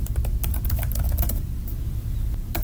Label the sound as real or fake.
fake